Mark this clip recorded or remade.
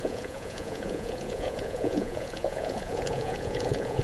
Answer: remade